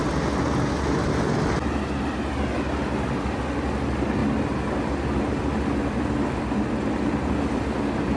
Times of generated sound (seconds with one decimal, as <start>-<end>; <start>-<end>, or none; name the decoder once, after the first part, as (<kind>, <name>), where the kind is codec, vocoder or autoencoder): none